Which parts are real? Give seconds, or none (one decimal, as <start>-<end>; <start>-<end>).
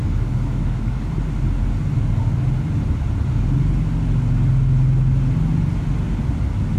1.1-6.8